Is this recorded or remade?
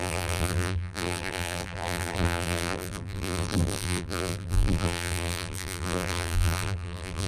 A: remade